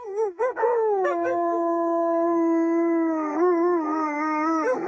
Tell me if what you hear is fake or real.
fake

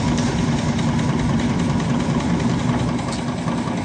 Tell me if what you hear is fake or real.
real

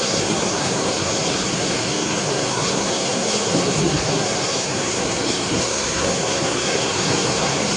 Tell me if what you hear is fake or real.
fake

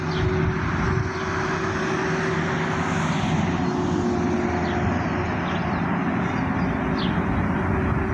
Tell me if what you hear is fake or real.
real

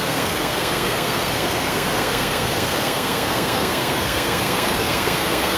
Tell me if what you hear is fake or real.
fake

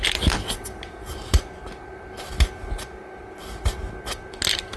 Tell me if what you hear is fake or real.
real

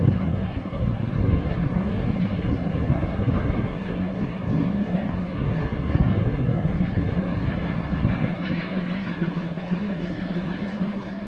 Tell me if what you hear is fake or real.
fake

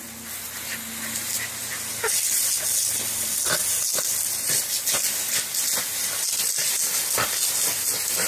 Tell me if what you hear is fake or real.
real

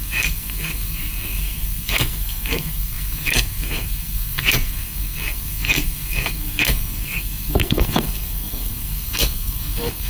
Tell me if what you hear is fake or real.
fake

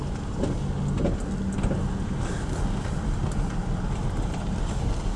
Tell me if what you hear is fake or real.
real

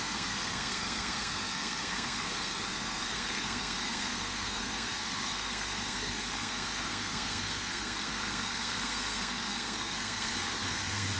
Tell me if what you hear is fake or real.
fake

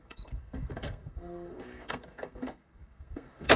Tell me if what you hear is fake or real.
fake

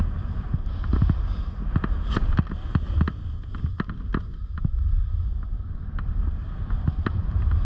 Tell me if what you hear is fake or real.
real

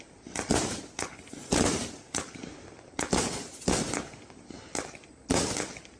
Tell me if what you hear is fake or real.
real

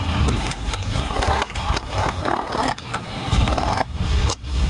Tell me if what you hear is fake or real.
fake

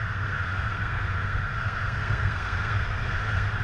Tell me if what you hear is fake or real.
fake